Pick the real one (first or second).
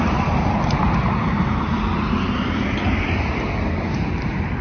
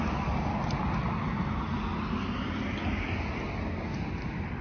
second